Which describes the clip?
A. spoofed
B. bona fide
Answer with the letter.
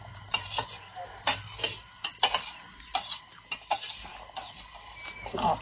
B